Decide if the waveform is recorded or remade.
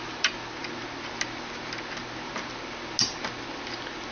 recorded